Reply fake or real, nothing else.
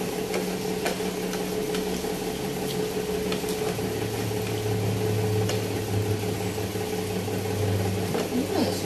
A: real